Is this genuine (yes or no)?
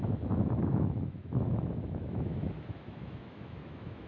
no